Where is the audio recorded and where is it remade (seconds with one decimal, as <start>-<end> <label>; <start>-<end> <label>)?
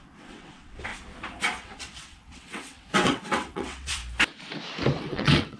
0.0-0.9 remade; 0.9-1.6 recorded; 1.6-4.0 remade; 4.0-5.0 recorded; 5.0-5.6 remade